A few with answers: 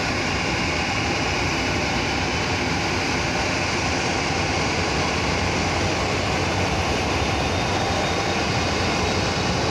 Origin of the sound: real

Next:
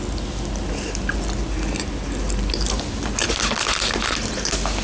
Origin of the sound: real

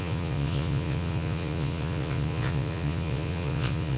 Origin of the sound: fake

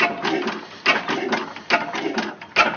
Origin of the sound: real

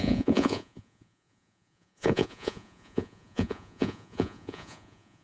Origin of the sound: fake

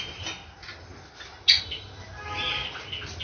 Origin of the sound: real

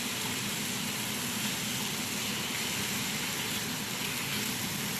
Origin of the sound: real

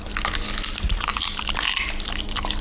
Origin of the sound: real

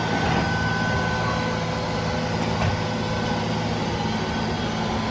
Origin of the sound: real